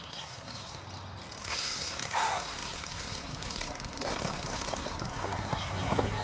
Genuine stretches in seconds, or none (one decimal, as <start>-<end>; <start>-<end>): 0.8-1.4